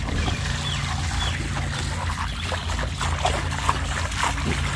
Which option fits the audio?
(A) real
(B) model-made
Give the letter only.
A